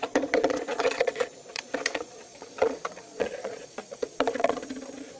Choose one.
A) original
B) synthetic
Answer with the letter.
B